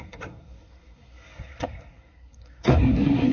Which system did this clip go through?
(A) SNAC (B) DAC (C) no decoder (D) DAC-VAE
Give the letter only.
A